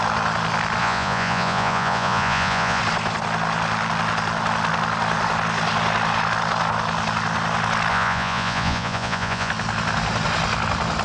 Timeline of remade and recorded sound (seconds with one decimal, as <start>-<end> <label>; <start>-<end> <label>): 0.0-0.8 recorded; 0.8-2.8 remade; 2.8-7.9 recorded; 7.9-9.5 remade; 9.5-11.0 recorded